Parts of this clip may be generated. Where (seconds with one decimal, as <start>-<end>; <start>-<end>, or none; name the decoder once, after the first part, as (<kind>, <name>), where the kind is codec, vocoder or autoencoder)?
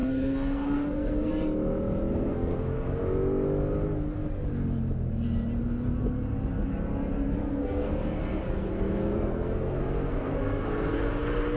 0.0-1.3 (codec, SNAC); 2.1-3.0; 7.5-11.1